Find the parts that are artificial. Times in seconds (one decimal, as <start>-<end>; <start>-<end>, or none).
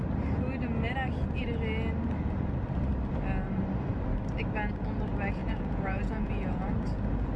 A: 5.4-6.7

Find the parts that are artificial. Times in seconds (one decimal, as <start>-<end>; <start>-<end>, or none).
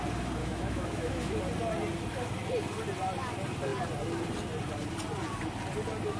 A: 0.4-1.4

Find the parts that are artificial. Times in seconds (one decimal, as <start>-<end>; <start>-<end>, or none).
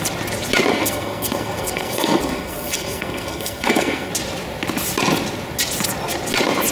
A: 0.7-4.1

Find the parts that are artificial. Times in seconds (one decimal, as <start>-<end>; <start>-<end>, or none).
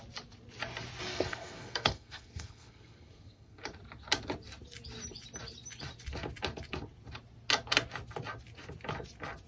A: 1.1-3.6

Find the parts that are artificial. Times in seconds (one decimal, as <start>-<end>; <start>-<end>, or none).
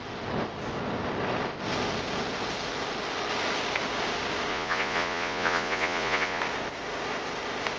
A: 4.5-6.4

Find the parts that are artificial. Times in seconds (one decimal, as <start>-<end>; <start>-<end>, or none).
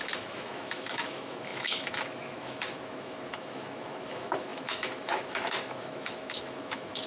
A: 0.0-7.1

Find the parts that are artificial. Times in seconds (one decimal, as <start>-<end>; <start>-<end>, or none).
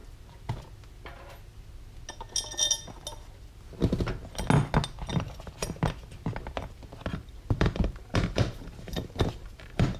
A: 5.1-5.8; 7.2-10.0